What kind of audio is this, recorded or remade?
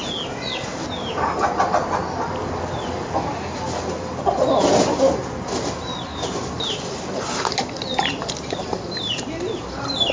recorded